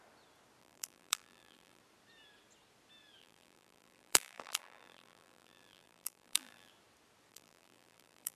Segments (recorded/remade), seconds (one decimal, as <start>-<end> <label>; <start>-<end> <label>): 0.0-0.6 recorded; 0.6-1.8 remade; 1.8-3.2 recorded; 3.2-6.7 remade; 6.7-7.3 recorded; 7.3-8.4 remade